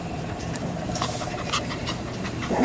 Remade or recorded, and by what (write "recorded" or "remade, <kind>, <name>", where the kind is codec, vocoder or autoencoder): remade, vocoder, BigVGAN v2